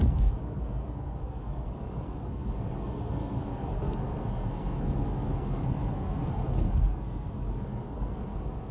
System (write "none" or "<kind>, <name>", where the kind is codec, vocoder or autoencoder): codec, SNAC